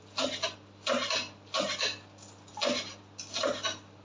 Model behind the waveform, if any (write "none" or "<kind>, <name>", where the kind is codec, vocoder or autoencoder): none